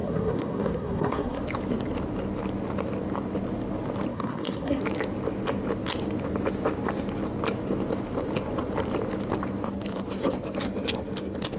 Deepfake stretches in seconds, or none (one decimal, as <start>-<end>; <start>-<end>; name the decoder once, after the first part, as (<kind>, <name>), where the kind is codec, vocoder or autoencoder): 0.0-1.4 (codec, SNAC); 4.1-4.8